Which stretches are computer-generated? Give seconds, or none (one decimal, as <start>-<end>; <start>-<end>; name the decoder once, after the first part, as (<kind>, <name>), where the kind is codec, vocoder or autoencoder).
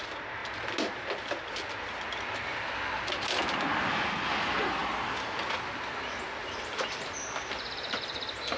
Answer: 6.4-8.6 (vocoder, BigVGAN v2)